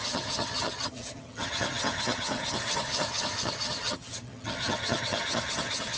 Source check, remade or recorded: remade